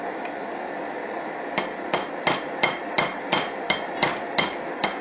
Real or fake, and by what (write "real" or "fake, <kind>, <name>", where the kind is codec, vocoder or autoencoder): fake, vocoder, BigVGAN v2